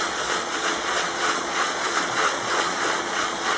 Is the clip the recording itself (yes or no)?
no